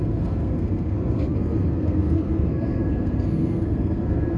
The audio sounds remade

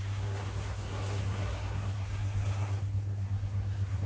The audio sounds remade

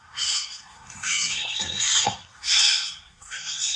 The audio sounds remade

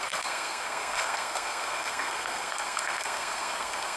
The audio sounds remade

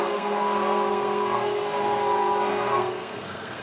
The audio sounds remade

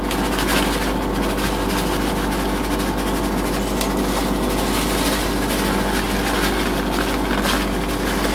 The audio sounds recorded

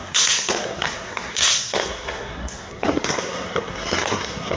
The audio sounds remade